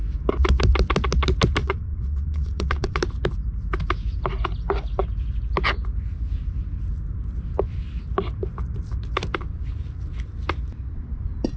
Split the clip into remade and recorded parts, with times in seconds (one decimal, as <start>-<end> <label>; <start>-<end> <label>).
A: 0.0-1.6 recorded; 1.6-3.0 remade; 3.0-11.6 recorded